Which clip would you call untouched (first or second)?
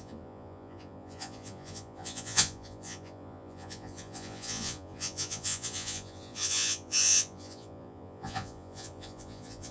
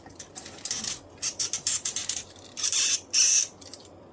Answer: second